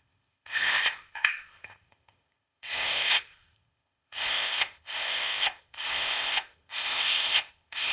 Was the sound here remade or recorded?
remade